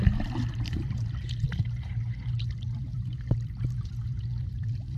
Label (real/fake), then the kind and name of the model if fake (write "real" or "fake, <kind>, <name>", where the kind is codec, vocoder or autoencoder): fake, vocoder, BigVGAN v2